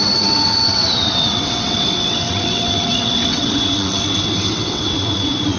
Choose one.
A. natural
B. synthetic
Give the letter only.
B